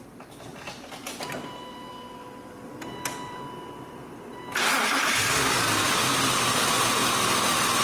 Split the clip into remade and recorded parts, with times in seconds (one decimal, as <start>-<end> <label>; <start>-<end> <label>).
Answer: 0.0-0.5 recorded; 0.5-5.2 remade; 5.2-7.8 recorded